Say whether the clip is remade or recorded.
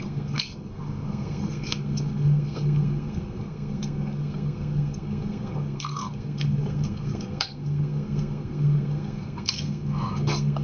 remade